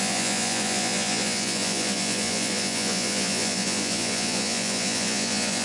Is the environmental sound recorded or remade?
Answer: remade